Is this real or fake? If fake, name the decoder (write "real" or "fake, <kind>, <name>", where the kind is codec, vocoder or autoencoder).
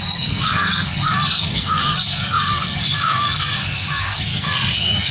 fake, codec, SNAC